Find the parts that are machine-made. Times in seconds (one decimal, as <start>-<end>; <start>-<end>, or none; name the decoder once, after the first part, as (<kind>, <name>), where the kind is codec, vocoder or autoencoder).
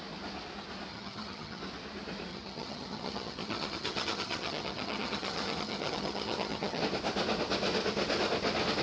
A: 0.9-1.6 (vocoder, HiFi-GAN); 2.3-6.8